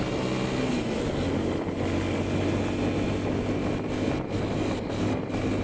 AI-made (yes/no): no